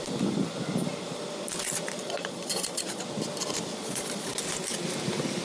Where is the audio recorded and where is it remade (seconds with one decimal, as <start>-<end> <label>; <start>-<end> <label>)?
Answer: 0.0-2.0 recorded; 2.0-3.0 remade; 3.0-3.7 recorded; 3.7-4.3 remade; 4.3-5.4 recorded